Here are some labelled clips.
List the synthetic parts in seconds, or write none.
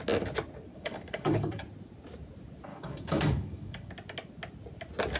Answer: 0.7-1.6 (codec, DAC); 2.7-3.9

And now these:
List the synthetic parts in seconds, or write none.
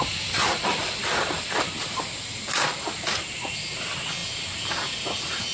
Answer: none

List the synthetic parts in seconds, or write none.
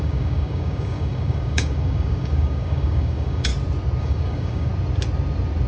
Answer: 0.0-3.5 (codec, DAC); 4.0-4.7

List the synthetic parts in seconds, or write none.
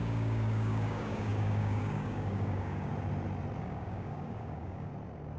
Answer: 0.0-2.9 (codec, DAC); 3.6-4.9